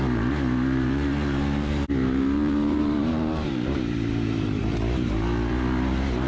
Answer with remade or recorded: remade